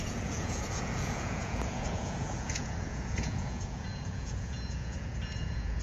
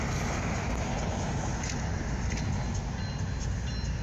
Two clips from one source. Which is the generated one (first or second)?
first